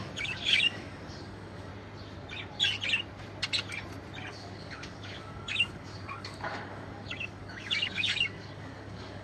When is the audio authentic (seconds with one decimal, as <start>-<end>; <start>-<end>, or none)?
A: 1.7-4.3